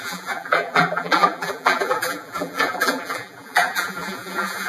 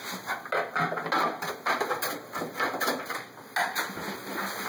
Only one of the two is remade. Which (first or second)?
first